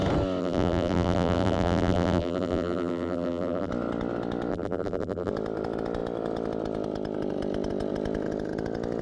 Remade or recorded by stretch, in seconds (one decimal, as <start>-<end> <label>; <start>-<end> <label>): 0.0-0.4 recorded; 0.4-3.7 remade; 3.7-4.5 recorded; 4.5-5.3 remade; 5.3-9.0 recorded